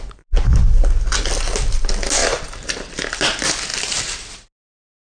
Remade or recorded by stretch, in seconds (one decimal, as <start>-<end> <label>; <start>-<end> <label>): 0.0-2.2 recorded; 2.2-2.9 remade; 2.9-3.7 recorded; 3.7-4.2 remade; 4.2-5.1 recorded